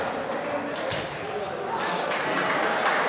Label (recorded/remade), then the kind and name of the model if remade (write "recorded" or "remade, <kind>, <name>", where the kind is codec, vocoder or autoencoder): recorded